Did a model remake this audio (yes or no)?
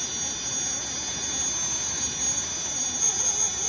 no